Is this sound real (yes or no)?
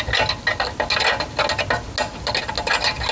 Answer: yes